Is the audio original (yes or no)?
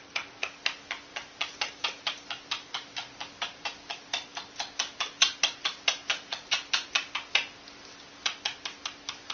yes